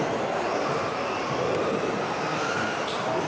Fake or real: fake